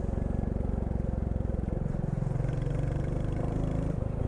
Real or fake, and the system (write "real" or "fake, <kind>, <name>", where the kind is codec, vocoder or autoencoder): fake, vocoder, BigVGAN v2